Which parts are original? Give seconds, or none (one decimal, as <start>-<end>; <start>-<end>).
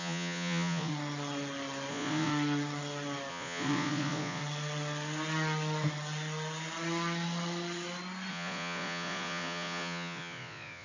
0.9-1.9; 2.3-3.3; 4.4-8.3